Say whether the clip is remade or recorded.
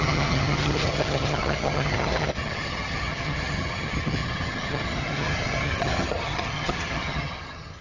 remade